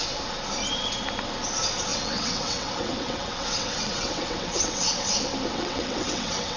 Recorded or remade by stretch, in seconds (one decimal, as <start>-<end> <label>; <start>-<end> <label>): 0.0-1.9 recorded; 1.9-5.1 remade; 5.1-5.5 recorded; 5.5-6.6 remade